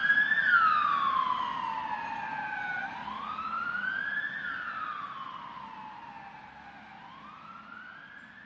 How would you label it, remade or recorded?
recorded